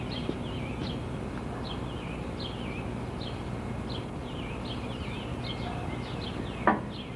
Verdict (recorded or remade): recorded